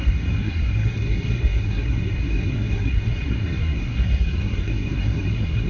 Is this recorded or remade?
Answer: remade